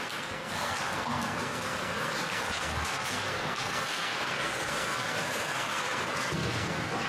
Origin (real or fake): fake